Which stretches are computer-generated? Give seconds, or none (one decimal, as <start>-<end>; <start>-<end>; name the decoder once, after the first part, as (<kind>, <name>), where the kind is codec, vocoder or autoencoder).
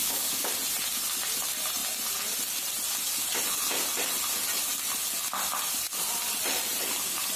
0.0-0.5 (codec, DAC)